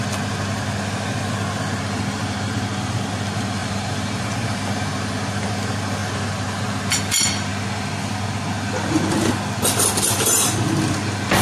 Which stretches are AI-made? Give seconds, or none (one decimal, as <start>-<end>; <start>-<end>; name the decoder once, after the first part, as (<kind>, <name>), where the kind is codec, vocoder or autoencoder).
3.6-5.5 (vocoder, BigVGAN v2); 6.0-6.6